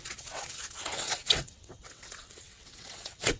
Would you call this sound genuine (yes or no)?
no